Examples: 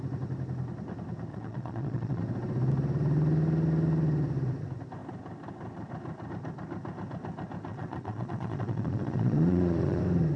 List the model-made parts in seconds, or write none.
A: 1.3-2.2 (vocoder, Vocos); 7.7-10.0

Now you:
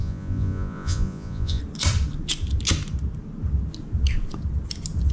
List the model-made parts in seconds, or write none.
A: 0.0-1.6 (vocoder, Vocos)

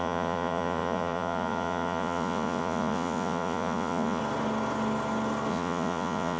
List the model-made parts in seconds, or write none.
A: 0.0-4.2 (vocoder, Vocos); 5.5-6.4

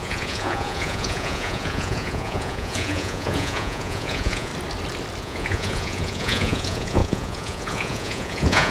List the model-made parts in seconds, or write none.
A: 0.0-4.5 (vocoder, Vocos); 5.2-8.7

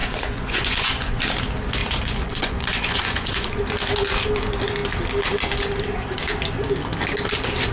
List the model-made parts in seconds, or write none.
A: 0.0-1.2 (vocoder, Vocos); 1.8-3.6